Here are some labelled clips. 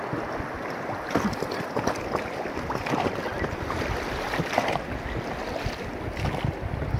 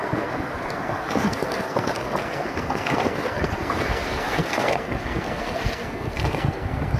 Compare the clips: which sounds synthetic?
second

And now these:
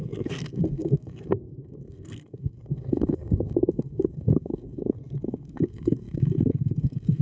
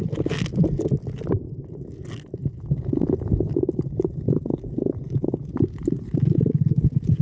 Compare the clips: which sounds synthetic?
first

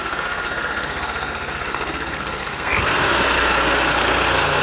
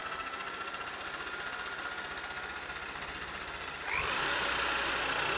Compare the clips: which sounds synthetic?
first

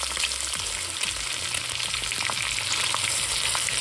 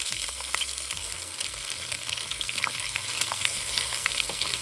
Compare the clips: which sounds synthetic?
second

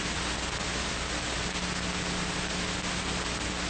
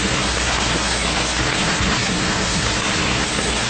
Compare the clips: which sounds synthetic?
second